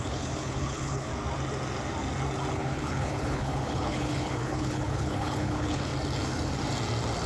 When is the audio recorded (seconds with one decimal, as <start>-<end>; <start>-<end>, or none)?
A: 1.1-2.5; 5.9-7.3